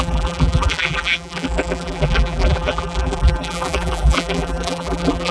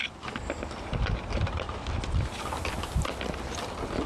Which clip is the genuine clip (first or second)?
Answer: second